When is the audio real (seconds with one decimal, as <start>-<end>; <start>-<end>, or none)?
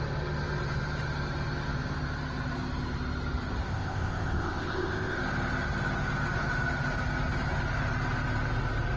0.0-3.7; 5.2-9.0